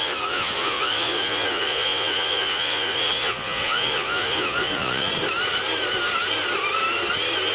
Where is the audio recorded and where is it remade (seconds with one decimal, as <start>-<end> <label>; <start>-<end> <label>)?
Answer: 0.0-5.1 remade; 5.1-7.5 recorded